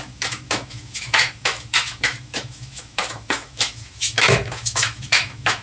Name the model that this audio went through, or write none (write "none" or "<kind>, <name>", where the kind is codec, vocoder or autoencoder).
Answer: autoencoder, DAC-VAE